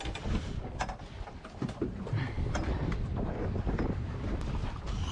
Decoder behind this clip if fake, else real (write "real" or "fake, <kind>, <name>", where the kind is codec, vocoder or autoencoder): real